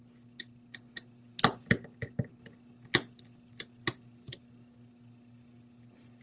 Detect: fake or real real